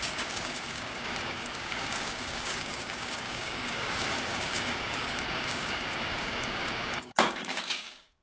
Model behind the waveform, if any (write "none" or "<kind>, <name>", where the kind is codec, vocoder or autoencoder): codec, DAC